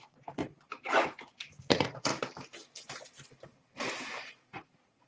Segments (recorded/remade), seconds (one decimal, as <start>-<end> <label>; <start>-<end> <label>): 0.0-0.4 remade; 0.4-1.7 recorded; 1.7-2.1 remade; 2.1-4.2 recorded; 4.2-5.1 remade